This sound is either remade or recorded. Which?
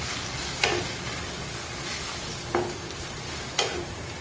recorded